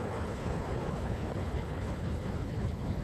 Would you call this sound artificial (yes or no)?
yes